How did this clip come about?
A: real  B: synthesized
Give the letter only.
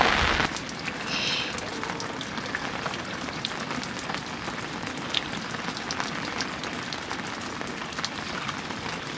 A